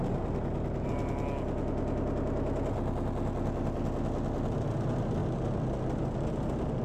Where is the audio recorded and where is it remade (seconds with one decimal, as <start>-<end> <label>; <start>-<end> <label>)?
0.0-6.8 recorded